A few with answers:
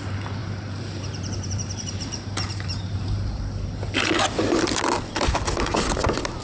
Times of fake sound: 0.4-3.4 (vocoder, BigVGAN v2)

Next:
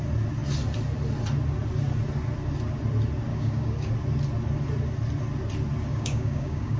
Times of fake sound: 3.3-3.9 (codec, DAC); 5.9-6.8

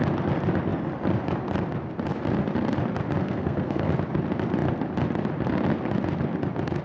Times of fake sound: 3.2-3.9 (codec, SNAC)

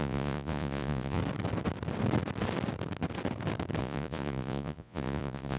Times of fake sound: 0.0-1.2 (vocoder, Vocos); 3.8-5.6

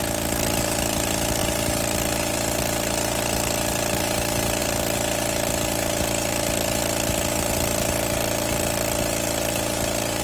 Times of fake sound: none